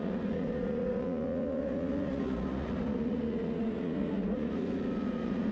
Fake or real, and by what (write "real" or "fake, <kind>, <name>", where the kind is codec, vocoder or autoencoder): fake, vocoder, Vocos